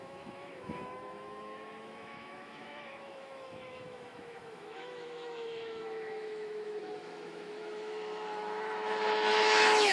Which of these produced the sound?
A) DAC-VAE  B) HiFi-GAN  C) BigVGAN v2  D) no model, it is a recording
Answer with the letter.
A